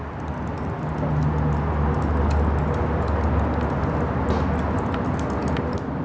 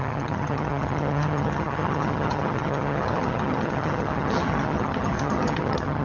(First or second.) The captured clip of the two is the first